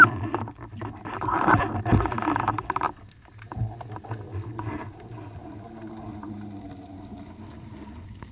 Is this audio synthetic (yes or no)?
no